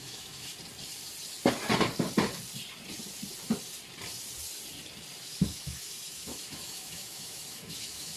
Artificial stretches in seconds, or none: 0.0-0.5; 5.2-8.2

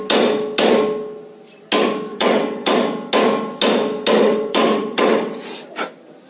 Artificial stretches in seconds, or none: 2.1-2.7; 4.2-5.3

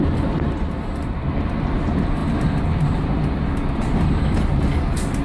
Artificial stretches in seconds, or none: none